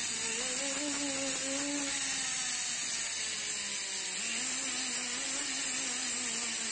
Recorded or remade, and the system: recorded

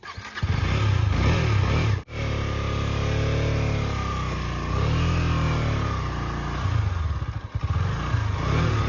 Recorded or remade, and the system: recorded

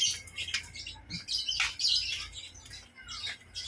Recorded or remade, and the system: recorded